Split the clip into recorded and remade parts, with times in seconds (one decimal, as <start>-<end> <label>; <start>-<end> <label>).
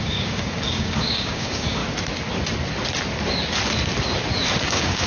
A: 0.0-1.8 remade; 1.8-4.6 recorded; 4.6-5.1 remade